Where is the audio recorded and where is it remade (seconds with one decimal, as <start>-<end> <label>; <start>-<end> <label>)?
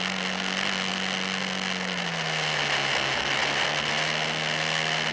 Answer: 0.0-5.1 recorded